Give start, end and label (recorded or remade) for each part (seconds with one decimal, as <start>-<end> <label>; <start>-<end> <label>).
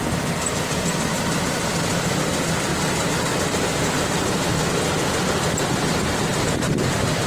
0.0-1.1 recorded; 1.1-2.2 remade; 2.2-2.7 recorded; 2.7-4.7 remade; 4.7-6.3 recorded; 6.3-7.3 remade